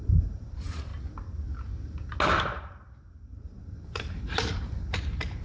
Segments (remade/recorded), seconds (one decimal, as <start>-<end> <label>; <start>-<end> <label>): 0.0-0.9 remade; 0.9-3.2 recorded; 3.2-5.4 remade